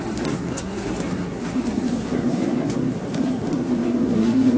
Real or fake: fake